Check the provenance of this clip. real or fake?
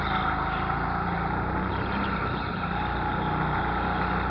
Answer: real